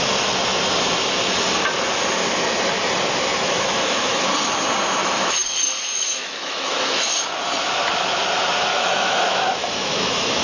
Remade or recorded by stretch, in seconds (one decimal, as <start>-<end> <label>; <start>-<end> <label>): 0.0-3.3 recorded; 3.3-4.3 remade; 4.3-5.0 recorded; 5.0-7.3 remade; 7.3-8.7 recorded; 8.7-10.4 remade

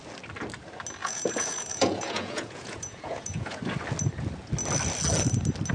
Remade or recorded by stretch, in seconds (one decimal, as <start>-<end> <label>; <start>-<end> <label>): 0.0-1.0 recorded; 1.0-3.6 remade; 3.6-5.7 recorded

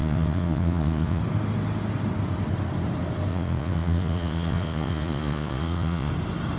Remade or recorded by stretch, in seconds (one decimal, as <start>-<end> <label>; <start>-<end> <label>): 0.0-1.2 remade; 1.2-3.3 recorded; 3.3-6.1 remade; 6.1-6.6 recorded

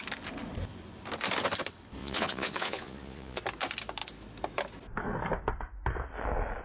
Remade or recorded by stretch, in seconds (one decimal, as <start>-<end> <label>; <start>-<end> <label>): 0.0-2.0 recorded; 2.0-3.4 remade; 3.4-6.6 recorded

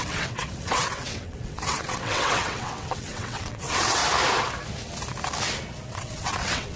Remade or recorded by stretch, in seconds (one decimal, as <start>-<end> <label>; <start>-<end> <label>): 0.0-4.0 remade; 4.0-5.9 recorded; 5.9-6.8 remade

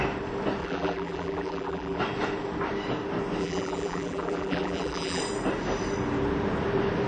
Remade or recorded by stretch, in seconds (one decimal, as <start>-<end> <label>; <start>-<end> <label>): 0.0-0.6 recorded; 0.6-2.0 remade; 2.0-3.4 recorded; 3.4-5.2 remade; 5.2-7.1 recorded

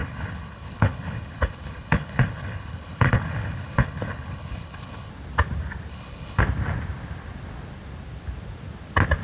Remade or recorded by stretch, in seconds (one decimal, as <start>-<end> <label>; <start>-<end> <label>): 0.0-5.1 remade; 5.1-5.9 recorded; 5.9-6.4 remade; 6.4-9.2 recorded